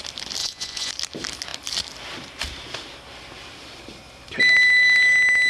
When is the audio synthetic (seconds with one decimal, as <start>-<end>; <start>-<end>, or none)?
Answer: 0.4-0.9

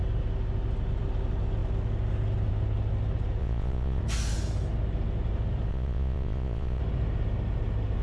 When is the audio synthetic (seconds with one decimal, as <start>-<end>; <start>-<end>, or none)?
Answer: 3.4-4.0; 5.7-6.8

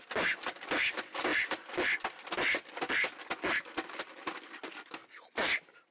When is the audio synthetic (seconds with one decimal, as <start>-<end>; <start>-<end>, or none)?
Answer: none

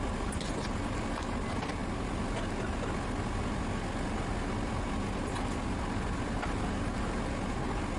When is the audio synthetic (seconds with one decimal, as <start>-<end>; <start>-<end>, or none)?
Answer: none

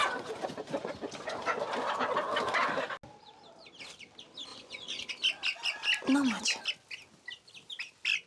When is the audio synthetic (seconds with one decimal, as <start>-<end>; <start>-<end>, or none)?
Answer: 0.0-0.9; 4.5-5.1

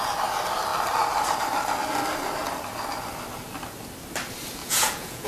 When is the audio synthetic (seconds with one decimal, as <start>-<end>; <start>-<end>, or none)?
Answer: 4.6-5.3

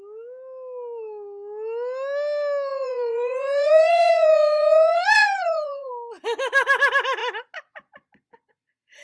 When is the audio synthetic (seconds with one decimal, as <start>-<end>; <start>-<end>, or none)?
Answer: 2.7-5.9

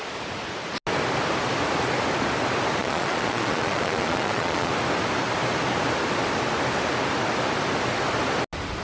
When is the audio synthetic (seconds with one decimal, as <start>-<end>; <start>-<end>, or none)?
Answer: 2.8-4.7